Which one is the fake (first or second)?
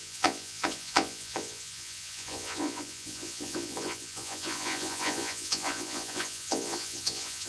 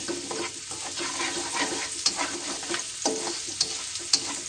first